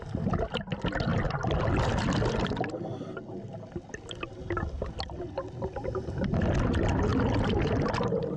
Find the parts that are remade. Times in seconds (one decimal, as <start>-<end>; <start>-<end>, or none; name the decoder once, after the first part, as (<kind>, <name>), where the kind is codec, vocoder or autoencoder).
none